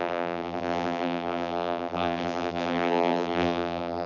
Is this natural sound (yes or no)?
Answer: no